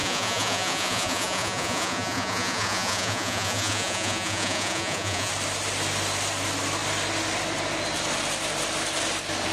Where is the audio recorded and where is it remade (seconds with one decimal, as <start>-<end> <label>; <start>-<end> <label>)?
0.0-5.3 remade; 5.3-9.5 recorded